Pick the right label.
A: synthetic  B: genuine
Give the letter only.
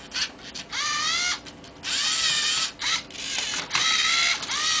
B